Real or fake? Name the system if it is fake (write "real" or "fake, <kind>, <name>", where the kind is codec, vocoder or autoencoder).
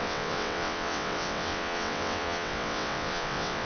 fake, vocoder, WaveNeXt